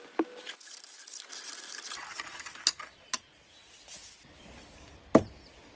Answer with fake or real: real